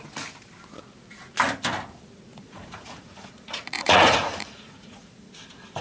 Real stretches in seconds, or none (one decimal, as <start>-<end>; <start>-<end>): 0.0-2.3; 5.3-5.8